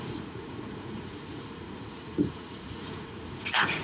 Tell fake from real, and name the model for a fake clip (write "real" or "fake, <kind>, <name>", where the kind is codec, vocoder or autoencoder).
fake, vocoder, Vocos